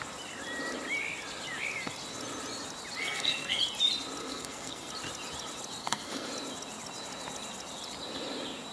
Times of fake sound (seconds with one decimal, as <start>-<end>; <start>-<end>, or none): 3.0-3.6; 4.2-4.9; 5.8-6.3